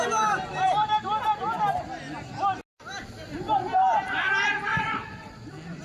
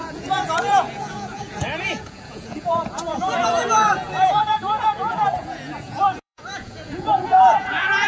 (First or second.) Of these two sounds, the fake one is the second